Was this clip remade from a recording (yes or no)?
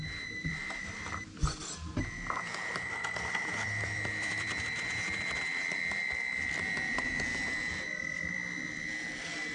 yes